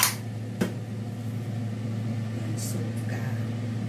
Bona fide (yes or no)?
yes